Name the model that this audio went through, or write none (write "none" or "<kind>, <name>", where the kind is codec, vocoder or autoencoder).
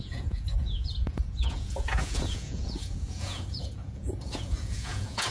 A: vocoder, Vocos